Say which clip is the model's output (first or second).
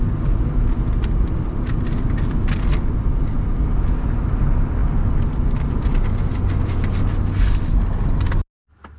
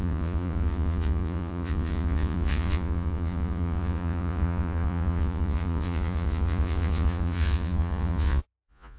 second